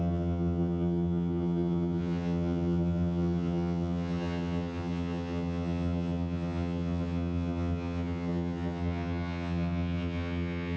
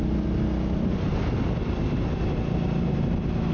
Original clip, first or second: second